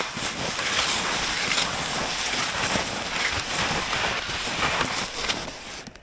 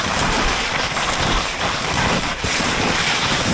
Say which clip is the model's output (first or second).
second